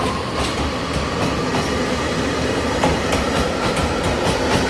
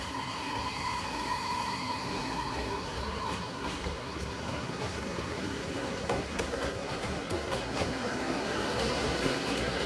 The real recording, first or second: first